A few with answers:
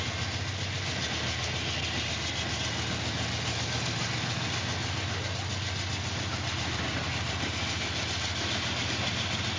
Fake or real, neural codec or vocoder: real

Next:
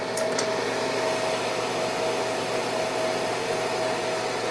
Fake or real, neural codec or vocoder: real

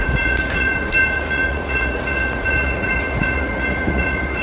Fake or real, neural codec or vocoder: fake, vocoder, Vocos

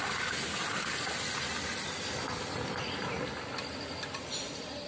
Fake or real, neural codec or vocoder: real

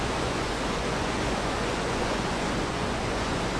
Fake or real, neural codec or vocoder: fake, vocoder, Vocos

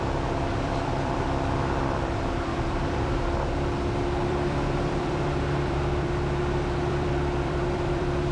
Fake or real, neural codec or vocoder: fake, vocoder, BigVGAN v2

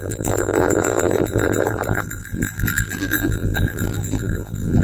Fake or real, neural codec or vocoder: fake, vocoder, BigVGAN v2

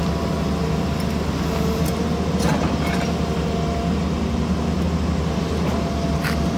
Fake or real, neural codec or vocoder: real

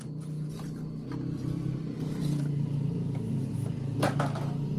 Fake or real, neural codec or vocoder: real